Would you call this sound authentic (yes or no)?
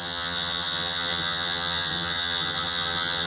no